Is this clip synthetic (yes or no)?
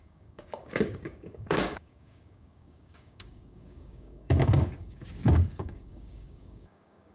yes